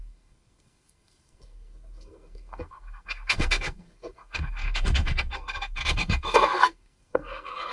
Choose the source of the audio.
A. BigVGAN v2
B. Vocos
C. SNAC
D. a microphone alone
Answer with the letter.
C